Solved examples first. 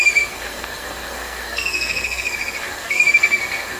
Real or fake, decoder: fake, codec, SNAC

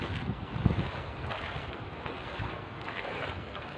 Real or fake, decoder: fake, codec, SNAC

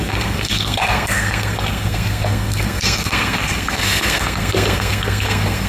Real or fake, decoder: fake, codec, SNAC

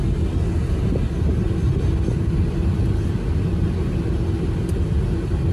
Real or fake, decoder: real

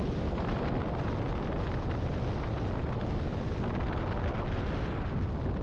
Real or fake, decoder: real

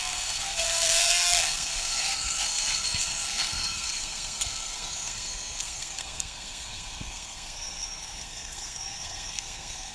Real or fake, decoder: fake, codec, SNAC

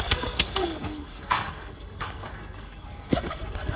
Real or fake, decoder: fake, codec, SNAC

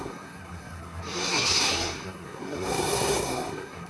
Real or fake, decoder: fake, codec, SNAC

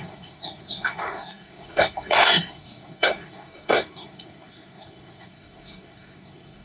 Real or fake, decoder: fake, codec, SNAC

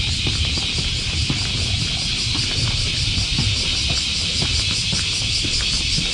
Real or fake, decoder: real